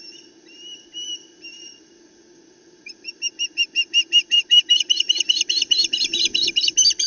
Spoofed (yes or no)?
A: no